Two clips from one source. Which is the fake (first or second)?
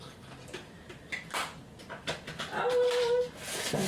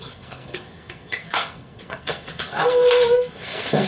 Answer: second